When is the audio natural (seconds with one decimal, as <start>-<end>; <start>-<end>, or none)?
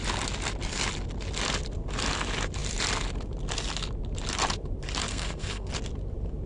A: 0.0-5.1; 5.7-6.5